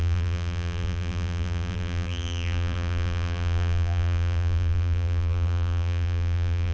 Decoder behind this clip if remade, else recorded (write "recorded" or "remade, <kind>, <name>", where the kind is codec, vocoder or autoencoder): remade, vocoder, BigVGAN v2